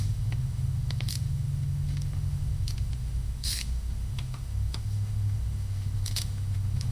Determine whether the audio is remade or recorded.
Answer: remade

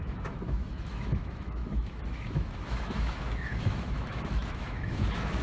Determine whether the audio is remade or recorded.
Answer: remade